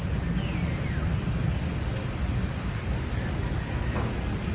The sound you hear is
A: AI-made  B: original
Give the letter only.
B